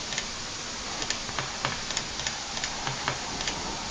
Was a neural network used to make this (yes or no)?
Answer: no